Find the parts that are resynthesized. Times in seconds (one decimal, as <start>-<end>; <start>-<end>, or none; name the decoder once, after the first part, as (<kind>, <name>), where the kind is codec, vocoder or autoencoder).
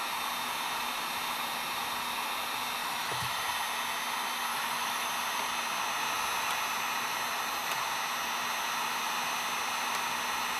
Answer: 2.8-3.4 (autoencoder, DAC-VAE); 4.5-5.1